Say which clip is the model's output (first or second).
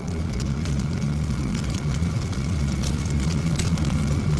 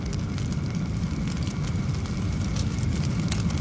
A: first